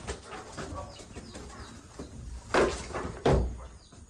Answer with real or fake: real